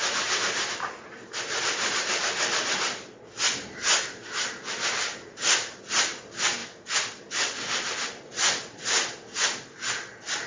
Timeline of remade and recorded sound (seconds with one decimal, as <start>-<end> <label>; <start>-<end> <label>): 0.0-10.5 recorded